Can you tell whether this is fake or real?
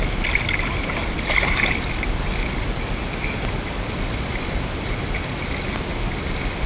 real